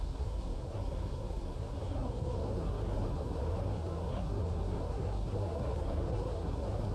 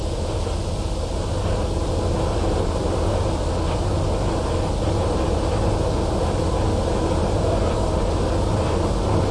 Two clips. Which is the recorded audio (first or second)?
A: second